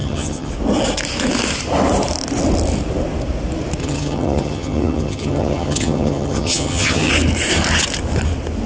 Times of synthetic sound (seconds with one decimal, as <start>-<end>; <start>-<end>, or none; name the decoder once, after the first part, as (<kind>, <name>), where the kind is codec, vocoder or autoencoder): 0.0-0.5 (vocoder, HiFi-GAN); 3.8-7.1

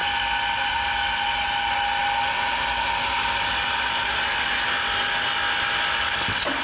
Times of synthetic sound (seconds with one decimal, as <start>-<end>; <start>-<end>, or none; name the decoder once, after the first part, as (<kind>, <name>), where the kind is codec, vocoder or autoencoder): none